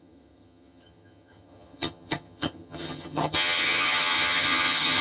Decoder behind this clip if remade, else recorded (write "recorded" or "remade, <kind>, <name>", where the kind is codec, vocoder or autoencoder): remade, vocoder, HiFi-GAN